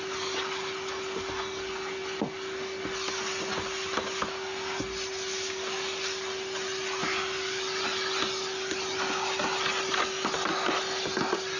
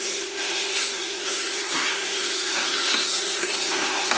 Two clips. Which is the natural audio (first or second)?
first